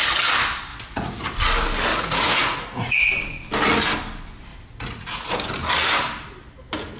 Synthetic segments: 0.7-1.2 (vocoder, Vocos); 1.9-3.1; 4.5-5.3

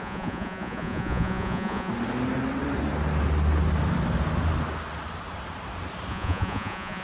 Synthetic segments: 0.0-1.9 (vocoder, Vocos); 6.1-7.0

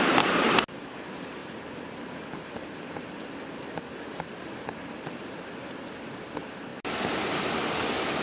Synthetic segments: none

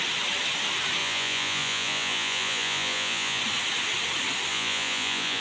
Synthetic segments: 1.0-3.4 (vocoder, Vocos); 4.5-5.4

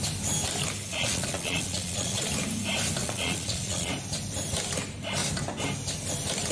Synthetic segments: 0.9-2.3 (vocoder, Vocos); 3.0-3.9

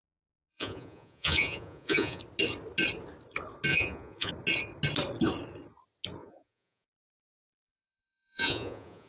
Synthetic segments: 0.5-2.2 (vocoder, Vocos); 3.7-4.3; 6.2-9.1

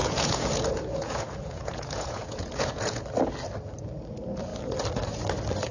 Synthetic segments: 0.0-3.0 (vocoder, Vocos)

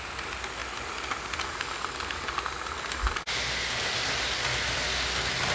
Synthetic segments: none